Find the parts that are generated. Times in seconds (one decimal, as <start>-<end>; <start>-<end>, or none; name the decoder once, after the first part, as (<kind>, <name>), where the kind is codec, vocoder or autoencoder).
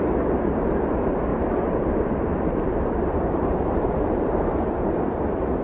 1.3-4.7 (vocoder, BigVGAN v2)